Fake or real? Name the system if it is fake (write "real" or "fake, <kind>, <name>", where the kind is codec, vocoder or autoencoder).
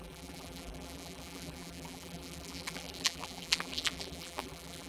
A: fake, vocoder, BigVGAN v2